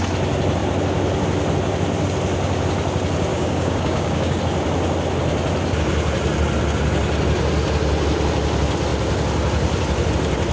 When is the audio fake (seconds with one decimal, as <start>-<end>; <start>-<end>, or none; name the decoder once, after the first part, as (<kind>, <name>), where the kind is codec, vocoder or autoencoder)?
3.3-4.4 (codec, DAC)